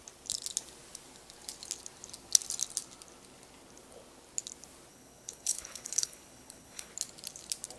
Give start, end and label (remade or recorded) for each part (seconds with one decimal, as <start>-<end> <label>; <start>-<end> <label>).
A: 0.0-4.9 recorded; 4.9-6.9 remade; 6.9-7.8 recorded